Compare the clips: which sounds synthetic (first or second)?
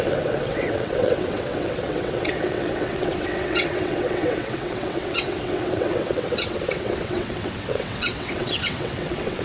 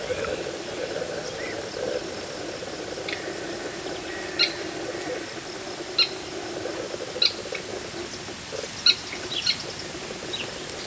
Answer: first